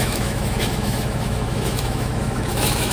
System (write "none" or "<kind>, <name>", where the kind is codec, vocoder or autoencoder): autoencoder, DAC-VAE